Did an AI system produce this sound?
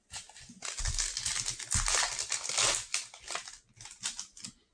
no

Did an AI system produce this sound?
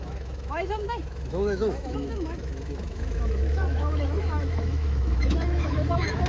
yes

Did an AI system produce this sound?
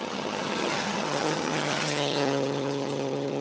yes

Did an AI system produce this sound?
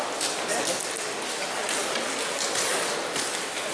no